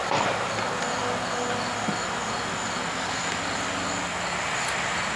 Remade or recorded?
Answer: recorded